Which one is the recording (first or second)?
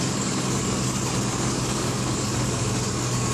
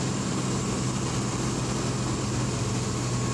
second